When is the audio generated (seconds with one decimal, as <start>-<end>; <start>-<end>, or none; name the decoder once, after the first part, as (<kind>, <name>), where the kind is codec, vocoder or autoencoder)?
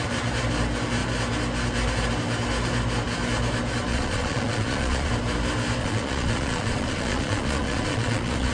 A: 3.9-5.1 (vocoder, Vocos); 5.8-8.5